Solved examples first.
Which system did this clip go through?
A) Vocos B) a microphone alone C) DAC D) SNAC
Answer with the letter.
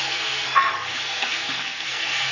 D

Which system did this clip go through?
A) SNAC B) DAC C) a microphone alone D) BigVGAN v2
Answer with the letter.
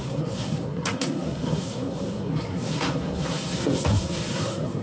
A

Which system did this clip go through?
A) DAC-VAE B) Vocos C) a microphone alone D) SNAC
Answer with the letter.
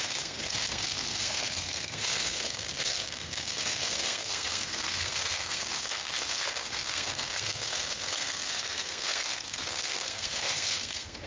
D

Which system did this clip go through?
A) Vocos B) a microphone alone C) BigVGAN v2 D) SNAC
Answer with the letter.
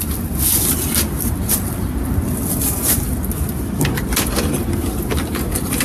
B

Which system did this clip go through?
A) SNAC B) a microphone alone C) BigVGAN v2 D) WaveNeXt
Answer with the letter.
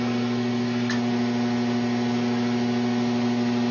B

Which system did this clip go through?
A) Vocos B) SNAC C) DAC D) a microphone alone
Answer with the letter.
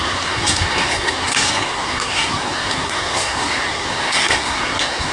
B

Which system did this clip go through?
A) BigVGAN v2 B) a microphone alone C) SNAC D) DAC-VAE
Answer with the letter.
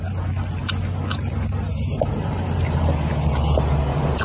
B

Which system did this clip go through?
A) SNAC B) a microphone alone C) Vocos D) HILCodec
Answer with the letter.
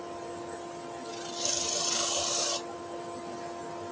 B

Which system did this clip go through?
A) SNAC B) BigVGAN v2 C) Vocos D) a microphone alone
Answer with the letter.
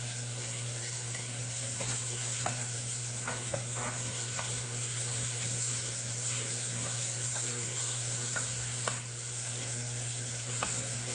A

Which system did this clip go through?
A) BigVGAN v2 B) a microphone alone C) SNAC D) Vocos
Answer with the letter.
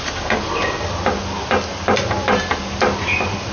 B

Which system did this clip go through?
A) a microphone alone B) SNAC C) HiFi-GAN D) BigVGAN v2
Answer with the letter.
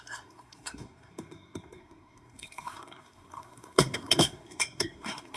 B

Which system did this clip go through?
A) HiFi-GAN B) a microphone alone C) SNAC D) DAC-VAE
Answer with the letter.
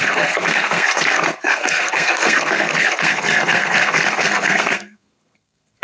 C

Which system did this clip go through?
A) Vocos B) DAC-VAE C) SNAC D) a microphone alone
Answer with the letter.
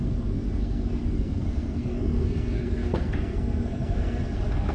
C